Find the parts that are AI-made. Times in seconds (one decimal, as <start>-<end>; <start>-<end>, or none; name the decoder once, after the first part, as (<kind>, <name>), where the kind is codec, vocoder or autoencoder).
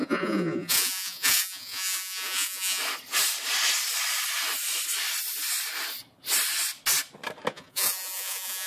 0.0-2.8 (vocoder, Vocos); 7.5-8.7